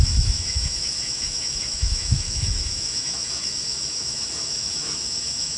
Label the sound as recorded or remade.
remade